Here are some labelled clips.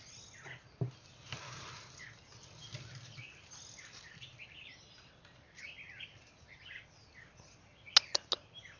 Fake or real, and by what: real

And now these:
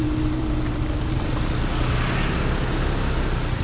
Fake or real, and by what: real